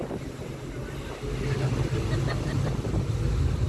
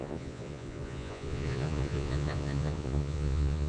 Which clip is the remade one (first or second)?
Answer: second